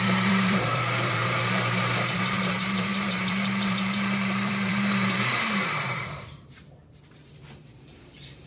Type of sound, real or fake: fake